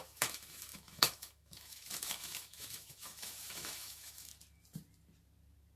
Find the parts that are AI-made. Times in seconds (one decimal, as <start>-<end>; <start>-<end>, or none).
0.0-4.3